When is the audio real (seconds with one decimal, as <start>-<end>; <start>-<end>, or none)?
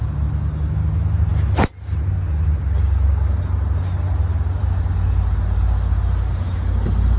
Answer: 0.0-7.2